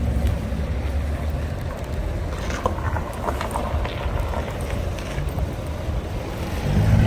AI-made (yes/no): no